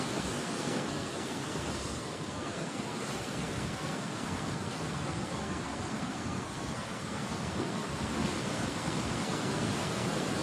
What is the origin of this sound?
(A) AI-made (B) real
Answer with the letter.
A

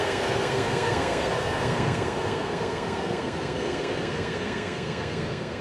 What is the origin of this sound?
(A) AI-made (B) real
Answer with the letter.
A